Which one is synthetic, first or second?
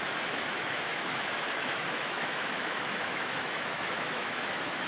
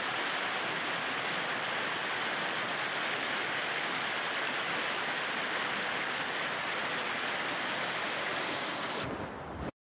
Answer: first